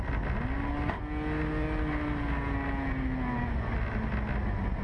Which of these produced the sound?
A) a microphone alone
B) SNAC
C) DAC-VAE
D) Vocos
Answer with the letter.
A